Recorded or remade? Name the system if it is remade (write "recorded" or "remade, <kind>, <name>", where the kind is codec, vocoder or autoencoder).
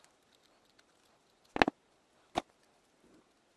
recorded